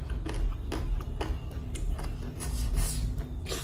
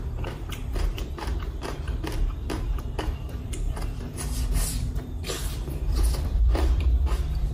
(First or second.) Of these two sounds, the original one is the first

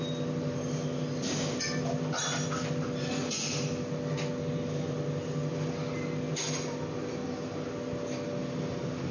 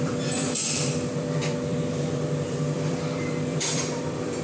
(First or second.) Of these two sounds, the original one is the first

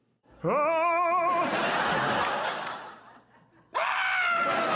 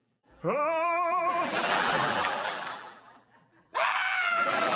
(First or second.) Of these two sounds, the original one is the first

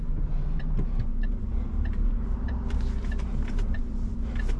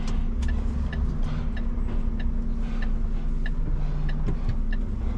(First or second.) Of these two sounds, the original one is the second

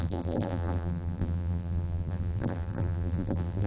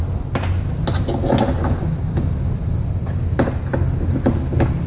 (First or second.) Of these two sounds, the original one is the second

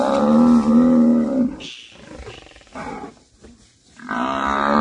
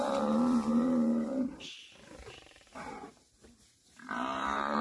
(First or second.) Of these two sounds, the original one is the first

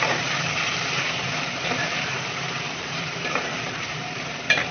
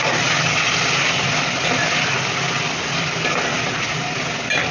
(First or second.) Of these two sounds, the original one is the second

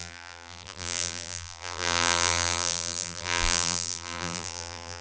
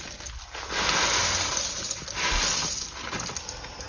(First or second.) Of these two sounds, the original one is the second